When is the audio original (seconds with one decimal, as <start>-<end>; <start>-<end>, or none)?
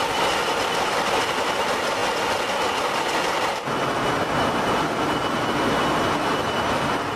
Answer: 2.0-2.5; 4.4-5.7